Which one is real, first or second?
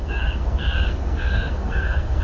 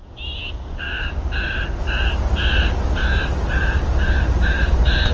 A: second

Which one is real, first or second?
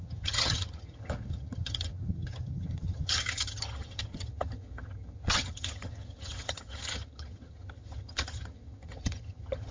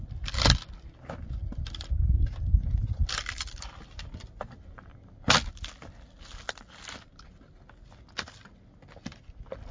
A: second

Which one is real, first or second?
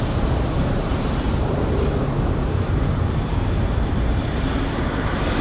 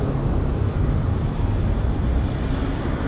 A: second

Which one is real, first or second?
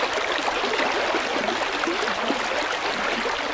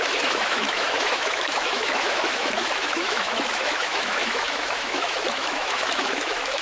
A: first